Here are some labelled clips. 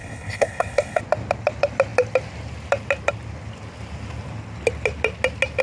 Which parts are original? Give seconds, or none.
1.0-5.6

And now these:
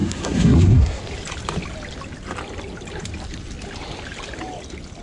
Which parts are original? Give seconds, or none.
1.0-5.0

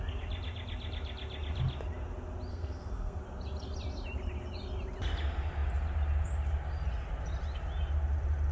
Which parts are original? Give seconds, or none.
0.0-2.5; 3.2-8.5

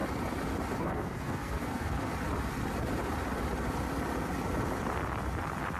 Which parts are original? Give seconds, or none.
0.0-0.8; 2.1-5.8

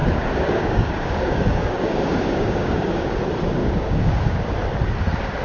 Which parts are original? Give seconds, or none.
3.2-3.6; 4.4-5.4

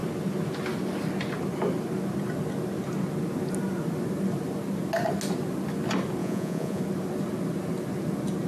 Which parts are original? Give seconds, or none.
0.0-6.2; 6.8-8.5

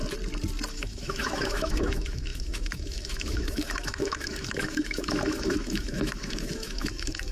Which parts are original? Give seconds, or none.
0.0-0.7

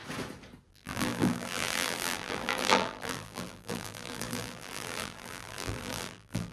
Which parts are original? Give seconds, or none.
0.0-0.7